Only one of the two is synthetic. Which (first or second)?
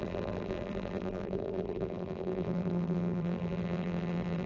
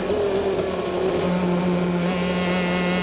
first